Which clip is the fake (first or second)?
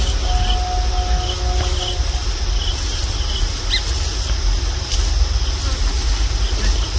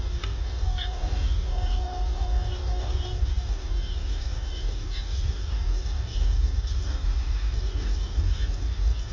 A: second